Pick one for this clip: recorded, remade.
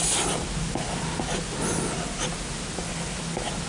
recorded